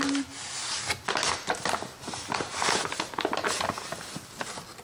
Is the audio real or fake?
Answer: real